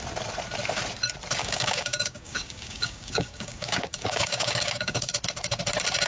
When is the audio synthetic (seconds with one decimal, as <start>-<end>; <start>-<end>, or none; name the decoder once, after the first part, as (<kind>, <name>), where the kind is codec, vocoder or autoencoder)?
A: 1.4-5.1 (codec, DAC)